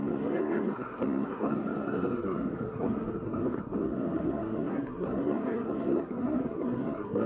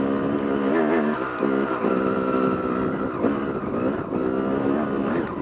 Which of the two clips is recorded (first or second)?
second